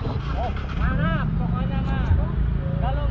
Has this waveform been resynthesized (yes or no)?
no